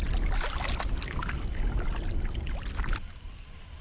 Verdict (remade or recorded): recorded